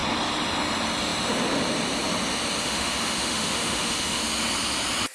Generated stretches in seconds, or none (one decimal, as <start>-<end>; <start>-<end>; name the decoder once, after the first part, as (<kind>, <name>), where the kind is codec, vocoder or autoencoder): 2.6-4.2 (autoencoder, DAC-VAE)